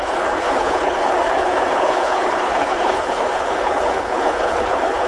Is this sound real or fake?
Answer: fake